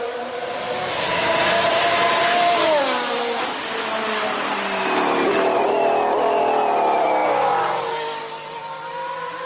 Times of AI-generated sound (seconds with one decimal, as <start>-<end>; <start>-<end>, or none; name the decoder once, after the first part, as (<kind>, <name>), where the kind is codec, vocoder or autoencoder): 1.7-3.6 (vocoder, BigVGAN v2)